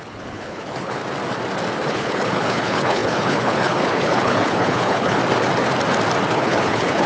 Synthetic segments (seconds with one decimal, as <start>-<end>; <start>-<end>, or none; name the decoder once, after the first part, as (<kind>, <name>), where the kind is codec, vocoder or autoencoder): 0.0-1.0 (codec, HILCodec); 1.8-5.2; 6.3-7.1

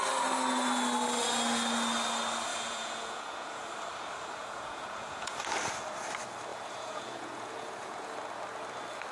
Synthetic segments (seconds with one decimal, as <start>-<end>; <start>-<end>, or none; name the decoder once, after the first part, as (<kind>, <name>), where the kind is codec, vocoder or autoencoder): 2.5-3.6 (vocoder, Vocos); 4.4-5.4; 6.5-8.1